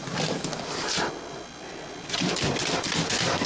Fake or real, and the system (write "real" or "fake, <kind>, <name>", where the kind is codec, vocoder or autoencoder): real